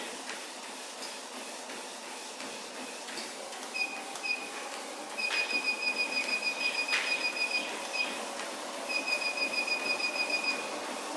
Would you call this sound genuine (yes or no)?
yes